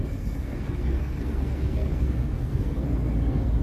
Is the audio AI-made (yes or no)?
yes